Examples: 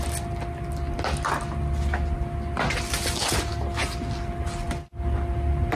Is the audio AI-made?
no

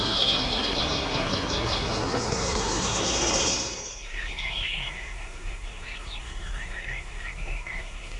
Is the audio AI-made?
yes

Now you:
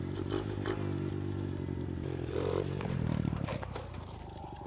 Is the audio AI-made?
yes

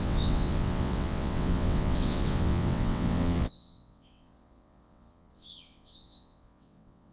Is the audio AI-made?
yes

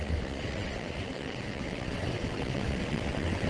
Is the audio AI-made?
yes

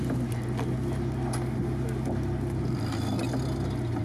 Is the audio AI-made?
no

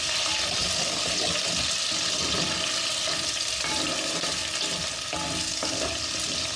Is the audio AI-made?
no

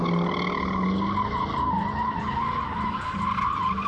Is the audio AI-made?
no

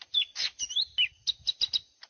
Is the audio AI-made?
no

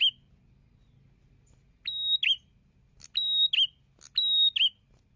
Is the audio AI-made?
no